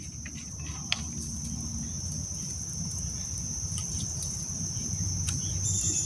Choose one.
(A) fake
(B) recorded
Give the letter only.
B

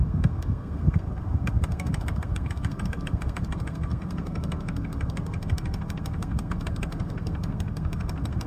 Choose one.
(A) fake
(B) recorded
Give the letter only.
A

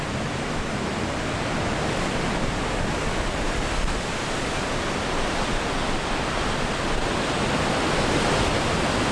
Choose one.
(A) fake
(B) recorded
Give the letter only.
B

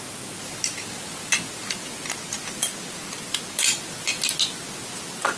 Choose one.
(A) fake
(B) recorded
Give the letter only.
B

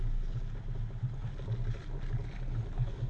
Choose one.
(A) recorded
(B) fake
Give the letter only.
A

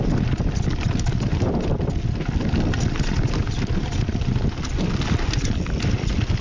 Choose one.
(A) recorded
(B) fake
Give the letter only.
A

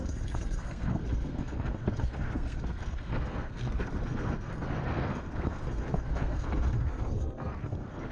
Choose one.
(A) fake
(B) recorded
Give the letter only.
A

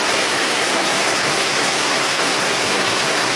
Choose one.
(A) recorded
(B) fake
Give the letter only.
B